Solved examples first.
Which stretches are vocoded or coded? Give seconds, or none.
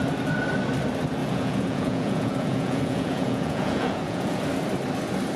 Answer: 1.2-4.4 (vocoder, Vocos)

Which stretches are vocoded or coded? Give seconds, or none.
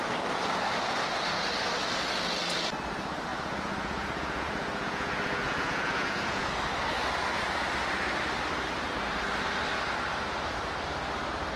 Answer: 3.3-6.5 (vocoder, Vocos)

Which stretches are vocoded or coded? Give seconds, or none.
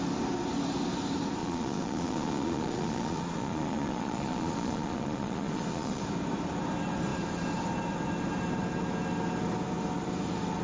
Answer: 1.4-6.0 (vocoder, Vocos)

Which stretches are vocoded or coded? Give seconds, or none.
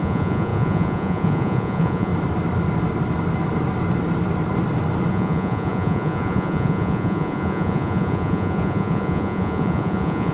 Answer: 0.0-2.1 (vocoder, Vocos); 5.1-10.3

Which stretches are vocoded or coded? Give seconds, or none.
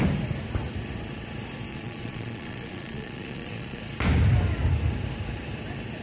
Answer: 1.7-3.8 (vocoder, Vocos)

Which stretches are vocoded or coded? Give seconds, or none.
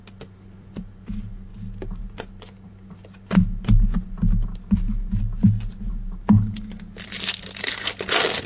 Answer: none